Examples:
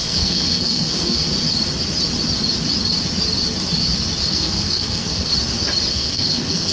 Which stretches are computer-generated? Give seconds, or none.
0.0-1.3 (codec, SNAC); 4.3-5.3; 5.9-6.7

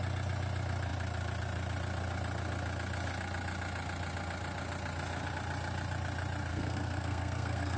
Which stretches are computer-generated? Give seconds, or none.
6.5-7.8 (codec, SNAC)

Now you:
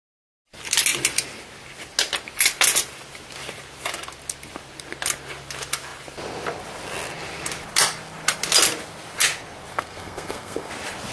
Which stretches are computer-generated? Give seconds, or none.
9.7-10.7 (codec, SNAC)

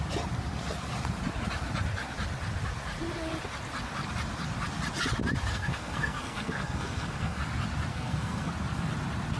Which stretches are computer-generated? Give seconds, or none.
5.5-7.4 (codec, SNAC); 7.9-8.5

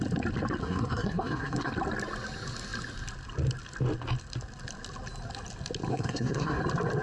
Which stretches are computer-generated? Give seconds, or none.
0.6-1.7 (codec, SNAC); 5.9-6.6

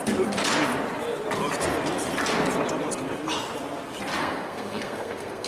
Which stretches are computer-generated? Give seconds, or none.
4.2-5.5 (codec, SNAC)

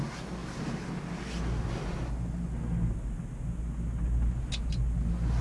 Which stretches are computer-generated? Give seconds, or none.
none

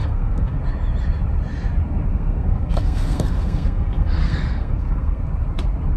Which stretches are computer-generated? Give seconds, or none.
0.0-0.6 (codec, SNAC); 2.1-5.2